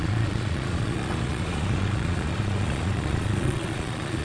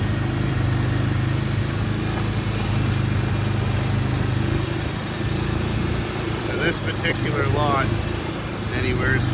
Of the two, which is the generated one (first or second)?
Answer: first